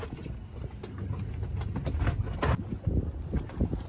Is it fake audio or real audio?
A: real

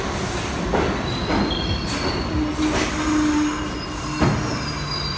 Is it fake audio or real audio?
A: real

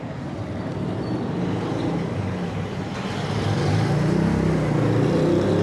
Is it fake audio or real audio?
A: real